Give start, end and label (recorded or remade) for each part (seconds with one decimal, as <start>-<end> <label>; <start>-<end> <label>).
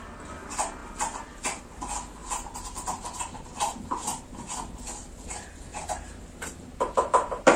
0.0-2.2 recorded; 2.2-4.6 remade; 4.6-5.7 recorded; 5.7-7.6 remade